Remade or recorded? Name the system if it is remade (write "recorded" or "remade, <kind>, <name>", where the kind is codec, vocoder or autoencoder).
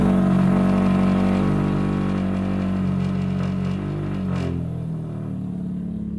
recorded